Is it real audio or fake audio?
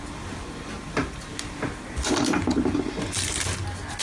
real